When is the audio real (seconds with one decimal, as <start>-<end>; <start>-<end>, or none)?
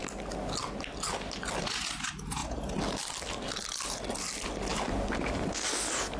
0.0-6.2